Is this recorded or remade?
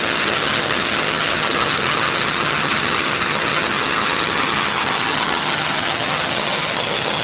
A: remade